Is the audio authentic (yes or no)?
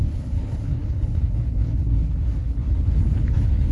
no